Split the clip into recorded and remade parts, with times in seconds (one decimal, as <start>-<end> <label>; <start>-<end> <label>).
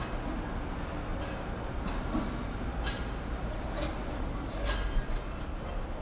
0.0-1.1 recorded; 1.1-3.0 remade; 3.0-6.0 recorded